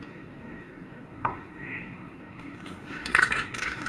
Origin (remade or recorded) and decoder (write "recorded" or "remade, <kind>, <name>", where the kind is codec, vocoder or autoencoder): remade, codec, SNAC